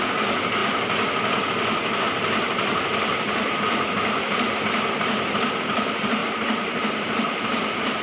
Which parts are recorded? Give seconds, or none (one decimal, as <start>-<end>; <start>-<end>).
0.0-6.2